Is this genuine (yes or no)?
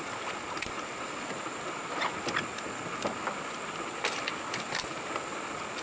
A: yes